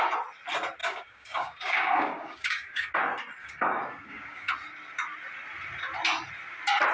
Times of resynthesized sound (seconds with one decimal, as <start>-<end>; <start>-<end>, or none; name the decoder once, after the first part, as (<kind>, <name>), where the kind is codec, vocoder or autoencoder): 0.8-2.9 (codec, DAC); 3.4-4.5